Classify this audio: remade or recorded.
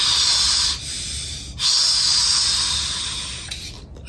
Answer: recorded